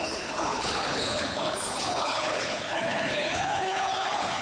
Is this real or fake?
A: fake